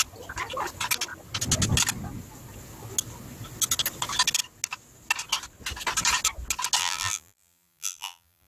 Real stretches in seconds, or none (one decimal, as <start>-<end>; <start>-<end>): 0.0-6.8